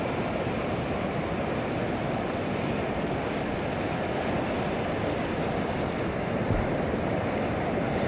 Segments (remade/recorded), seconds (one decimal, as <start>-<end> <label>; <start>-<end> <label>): 0.0-8.1 recorded